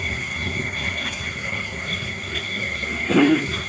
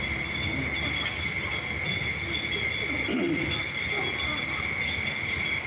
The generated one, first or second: first